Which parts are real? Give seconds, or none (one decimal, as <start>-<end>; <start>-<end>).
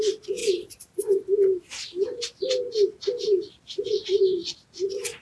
0.0-5.2